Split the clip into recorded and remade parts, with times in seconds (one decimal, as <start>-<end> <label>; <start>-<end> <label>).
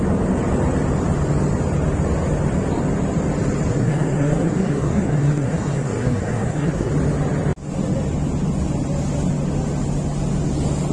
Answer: 0.0-3.7 recorded; 3.7-6.9 remade; 6.9-10.9 recorded